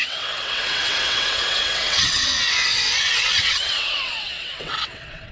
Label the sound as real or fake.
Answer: fake